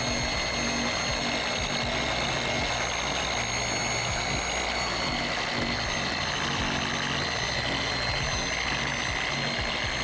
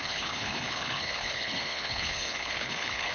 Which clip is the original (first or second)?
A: first